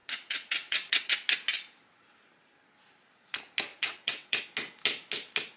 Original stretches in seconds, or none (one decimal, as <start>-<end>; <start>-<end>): 1.1-3.7; 4.4-5.6